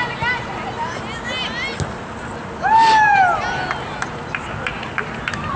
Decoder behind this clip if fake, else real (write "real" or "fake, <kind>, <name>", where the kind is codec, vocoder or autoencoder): real